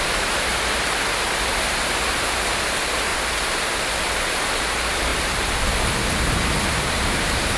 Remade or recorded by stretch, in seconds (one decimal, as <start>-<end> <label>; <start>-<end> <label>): 0.0-0.5 remade; 0.5-2.1 recorded; 2.1-3.1 remade; 3.1-3.8 recorded; 3.8-5.1 remade; 5.1-6.7 recorded; 6.7-7.6 remade